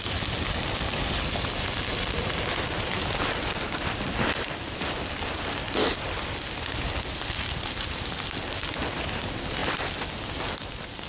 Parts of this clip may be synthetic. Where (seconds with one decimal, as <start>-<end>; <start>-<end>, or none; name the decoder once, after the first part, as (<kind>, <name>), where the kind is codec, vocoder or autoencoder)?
none